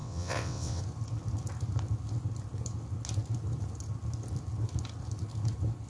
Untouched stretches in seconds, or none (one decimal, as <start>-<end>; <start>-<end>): 0.8-5.9